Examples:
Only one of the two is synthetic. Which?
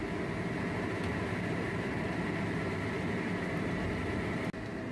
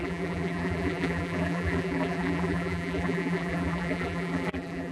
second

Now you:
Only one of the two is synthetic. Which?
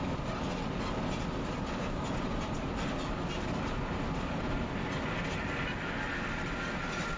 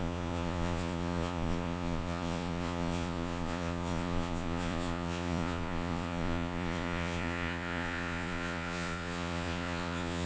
second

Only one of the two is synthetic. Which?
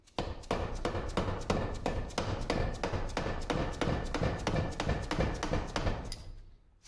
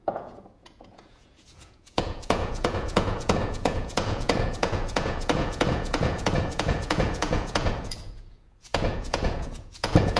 second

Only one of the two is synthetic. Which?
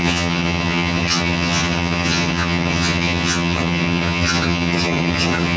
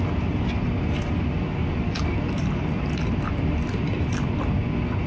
first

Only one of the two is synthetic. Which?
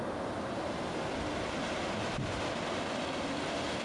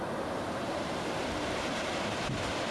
second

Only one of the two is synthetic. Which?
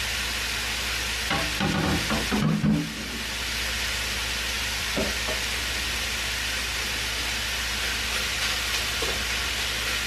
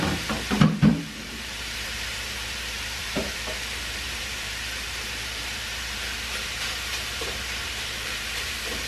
second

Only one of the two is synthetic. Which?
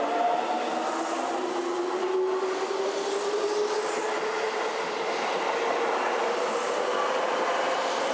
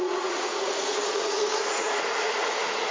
second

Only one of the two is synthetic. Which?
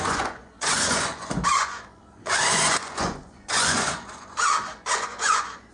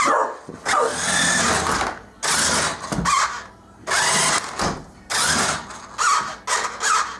first